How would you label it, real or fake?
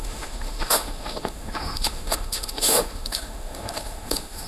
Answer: fake